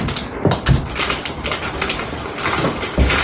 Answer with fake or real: real